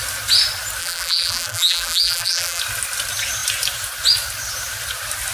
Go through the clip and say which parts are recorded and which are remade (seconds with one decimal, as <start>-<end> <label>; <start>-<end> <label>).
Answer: 0.0-0.8 recorded; 0.8-2.6 remade; 2.6-5.3 recorded